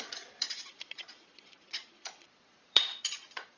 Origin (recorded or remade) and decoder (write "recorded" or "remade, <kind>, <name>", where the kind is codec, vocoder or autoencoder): remade, vocoder, Vocos